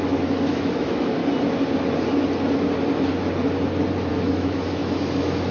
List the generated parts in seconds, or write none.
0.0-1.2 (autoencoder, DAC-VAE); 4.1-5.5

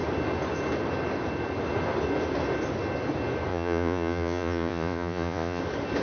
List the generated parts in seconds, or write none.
3.5-5.6 (vocoder, Vocos)

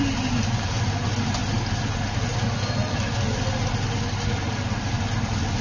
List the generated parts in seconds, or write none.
none

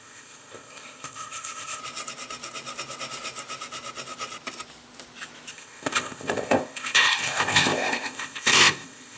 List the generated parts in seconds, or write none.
0.0-1.8 (codec, ZipCodec); 5.5-9.2